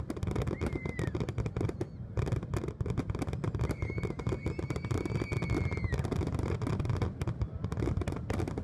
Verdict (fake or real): real